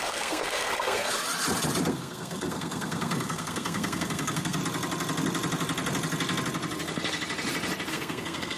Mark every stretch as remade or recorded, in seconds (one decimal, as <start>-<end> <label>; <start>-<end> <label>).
0.0-1.2 remade; 1.2-1.9 recorded; 1.9-4.6 remade; 4.6-7.9 recorded; 7.9-8.6 remade

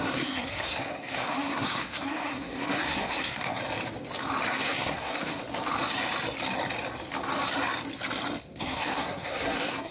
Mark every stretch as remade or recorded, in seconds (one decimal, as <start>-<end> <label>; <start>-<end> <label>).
0.0-3.6 remade; 3.6-4.5 recorded; 4.5-5.4 remade; 5.4-8.6 recorded; 8.6-9.9 remade

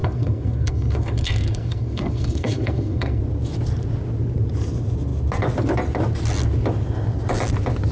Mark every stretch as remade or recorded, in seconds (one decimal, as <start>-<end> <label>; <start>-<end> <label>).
0.0-3.2 remade; 3.2-7.9 recorded

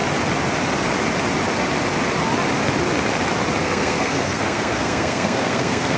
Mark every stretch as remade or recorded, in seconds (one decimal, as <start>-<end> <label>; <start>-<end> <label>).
0.0-3.6 recorded; 3.6-6.0 remade

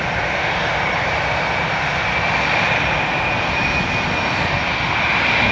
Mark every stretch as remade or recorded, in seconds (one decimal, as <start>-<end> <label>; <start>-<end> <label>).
0.0-5.5 recorded

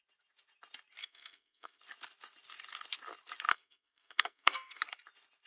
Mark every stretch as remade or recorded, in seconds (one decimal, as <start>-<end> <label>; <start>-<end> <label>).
0.0-1.0 recorded; 1.0-1.8 remade; 1.8-3.5 recorded; 3.5-4.8 remade; 4.8-5.5 recorded

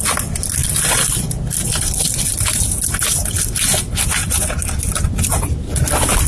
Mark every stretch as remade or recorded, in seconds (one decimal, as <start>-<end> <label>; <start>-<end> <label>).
0.0-6.3 recorded